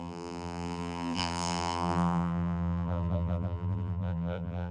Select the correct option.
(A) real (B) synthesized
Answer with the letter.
B